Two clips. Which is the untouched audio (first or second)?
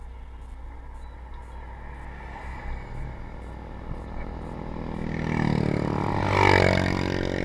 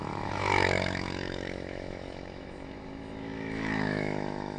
first